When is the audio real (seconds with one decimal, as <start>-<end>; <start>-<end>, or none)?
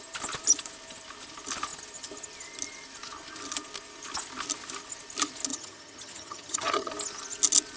0.0-5.5; 6.9-7.8